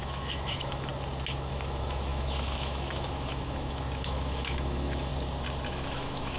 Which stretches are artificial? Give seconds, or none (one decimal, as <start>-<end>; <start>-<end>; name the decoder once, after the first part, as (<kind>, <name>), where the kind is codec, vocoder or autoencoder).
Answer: 0.0-0.9 (autoencoder, DAC-VAE); 1.5-5.1; 5.7-6.4